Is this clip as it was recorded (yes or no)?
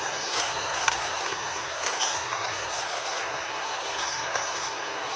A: no